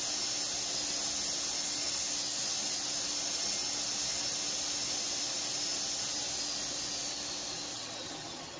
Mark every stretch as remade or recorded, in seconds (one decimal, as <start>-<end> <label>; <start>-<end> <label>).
0.0-7.7 recorded; 7.7-8.6 remade